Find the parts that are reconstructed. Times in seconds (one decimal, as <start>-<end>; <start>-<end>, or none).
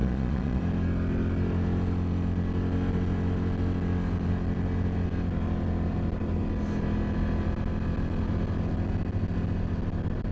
0.0-0.6